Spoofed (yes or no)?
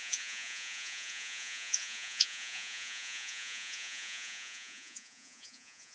yes